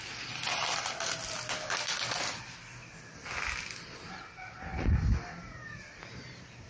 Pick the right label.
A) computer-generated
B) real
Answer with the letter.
B